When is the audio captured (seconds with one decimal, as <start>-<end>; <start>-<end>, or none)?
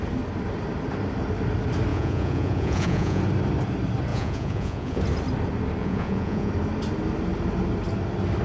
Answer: 0.0-1.9; 3.2-4.1; 5.0-5.8; 6.5-8.4